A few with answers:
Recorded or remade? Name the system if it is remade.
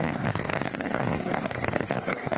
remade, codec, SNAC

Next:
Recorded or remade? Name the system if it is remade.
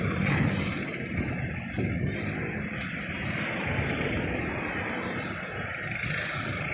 recorded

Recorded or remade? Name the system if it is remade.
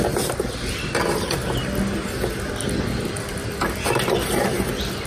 recorded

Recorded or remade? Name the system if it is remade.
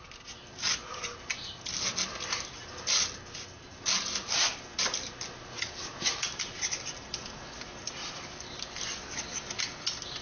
recorded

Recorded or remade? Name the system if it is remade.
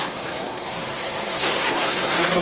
remade, codec, SNAC